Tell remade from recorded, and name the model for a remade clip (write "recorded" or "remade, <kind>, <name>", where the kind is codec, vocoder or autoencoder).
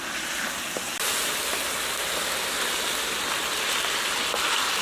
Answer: recorded